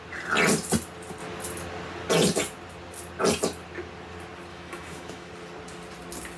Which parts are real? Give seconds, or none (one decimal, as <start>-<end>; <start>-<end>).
0.0-4.5; 5.3-6.4